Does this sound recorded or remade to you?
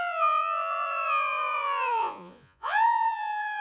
remade